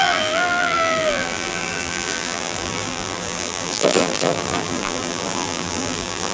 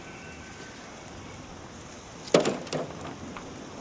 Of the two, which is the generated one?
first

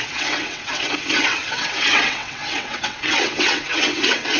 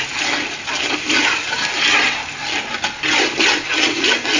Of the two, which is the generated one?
first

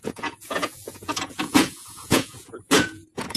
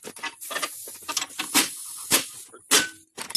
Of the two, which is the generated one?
first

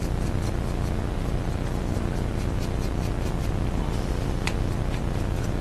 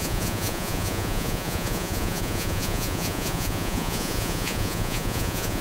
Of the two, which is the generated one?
second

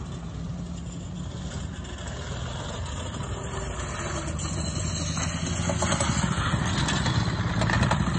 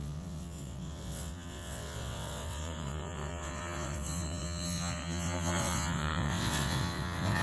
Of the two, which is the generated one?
second